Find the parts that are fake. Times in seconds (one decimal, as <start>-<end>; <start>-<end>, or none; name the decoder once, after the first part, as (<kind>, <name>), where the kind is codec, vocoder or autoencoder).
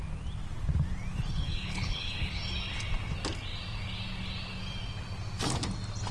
1.1-2.4 (codec, HILCodec)